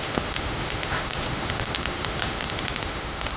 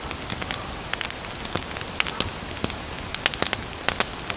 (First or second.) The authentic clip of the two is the second